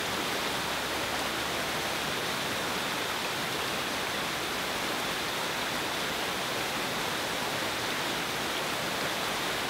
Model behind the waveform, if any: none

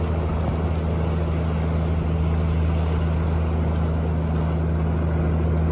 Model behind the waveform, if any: none